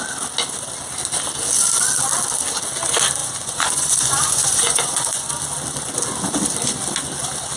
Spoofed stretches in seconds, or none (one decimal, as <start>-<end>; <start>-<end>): 3.2-5.3